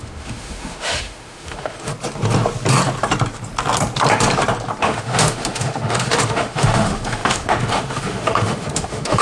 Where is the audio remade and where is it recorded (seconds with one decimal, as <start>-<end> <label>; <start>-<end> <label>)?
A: 0.0-1.9 remade; 1.9-4.8 recorded; 4.8-9.2 remade